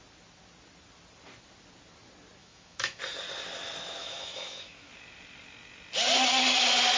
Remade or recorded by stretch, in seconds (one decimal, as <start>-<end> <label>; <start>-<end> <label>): 0.0-2.4 recorded; 2.4-3.0 remade; 3.0-4.0 recorded; 4.0-4.9 remade; 4.9-7.0 recorded